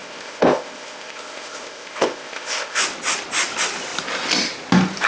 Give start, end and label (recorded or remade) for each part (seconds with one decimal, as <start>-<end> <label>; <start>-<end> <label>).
0.0-2.8 remade; 2.8-5.1 recorded